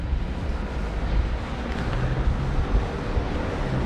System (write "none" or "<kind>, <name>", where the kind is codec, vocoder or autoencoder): none